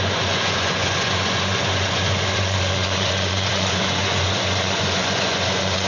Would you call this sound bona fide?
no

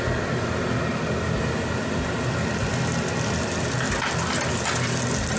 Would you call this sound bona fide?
yes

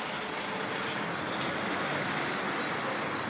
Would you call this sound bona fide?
yes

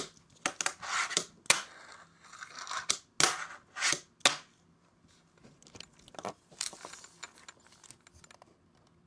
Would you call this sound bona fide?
yes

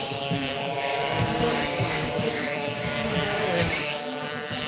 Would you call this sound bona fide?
no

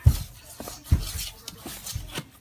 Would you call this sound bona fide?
yes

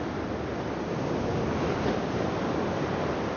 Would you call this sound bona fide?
no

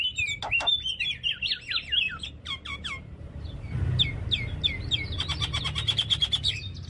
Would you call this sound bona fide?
yes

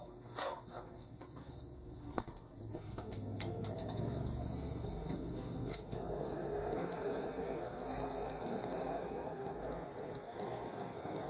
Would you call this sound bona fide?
no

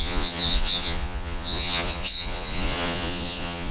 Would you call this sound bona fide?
no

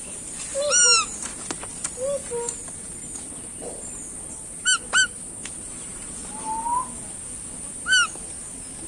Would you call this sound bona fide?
yes